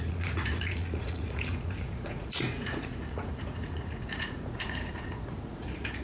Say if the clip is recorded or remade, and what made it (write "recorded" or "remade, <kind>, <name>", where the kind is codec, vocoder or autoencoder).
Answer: remade, vocoder, Vocos